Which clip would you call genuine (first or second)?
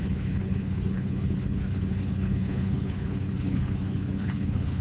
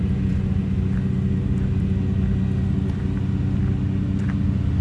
second